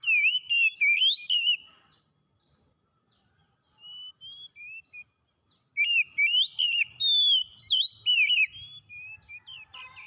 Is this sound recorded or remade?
recorded